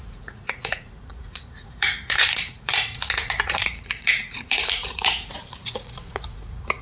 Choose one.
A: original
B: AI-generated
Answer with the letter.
B